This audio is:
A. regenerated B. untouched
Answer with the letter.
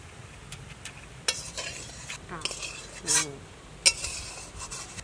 B